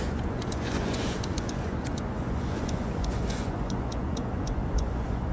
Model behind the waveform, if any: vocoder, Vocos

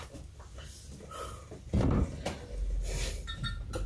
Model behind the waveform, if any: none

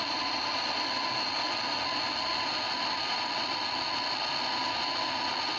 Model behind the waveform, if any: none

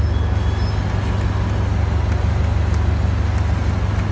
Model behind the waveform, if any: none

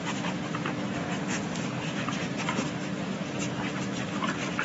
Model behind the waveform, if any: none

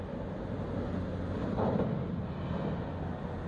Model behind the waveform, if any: none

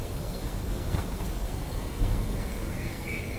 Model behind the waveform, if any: codec, SNAC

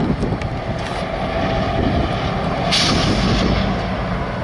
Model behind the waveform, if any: none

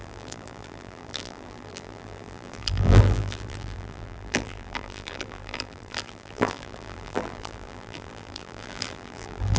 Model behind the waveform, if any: vocoder, BigVGAN v2